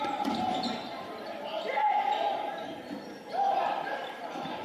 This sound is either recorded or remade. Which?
remade